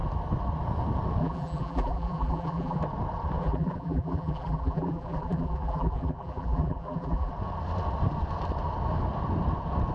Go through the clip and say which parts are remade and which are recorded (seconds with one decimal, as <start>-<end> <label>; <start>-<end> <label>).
0.0-1.2 recorded; 1.2-2.8 remade; 2.8-3.4 recorded; 3.4-7.3 remade; 7.3-9.9 recorded